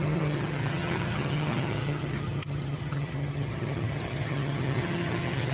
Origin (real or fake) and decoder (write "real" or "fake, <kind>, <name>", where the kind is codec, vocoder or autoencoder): fake, vocoder, HiFi-GAN